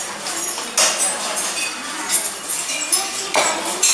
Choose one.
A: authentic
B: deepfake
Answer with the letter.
A